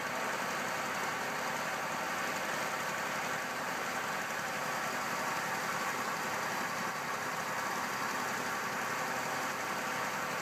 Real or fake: real